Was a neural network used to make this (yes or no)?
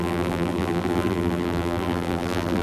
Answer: yes